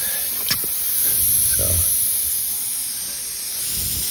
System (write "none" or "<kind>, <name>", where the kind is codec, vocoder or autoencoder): none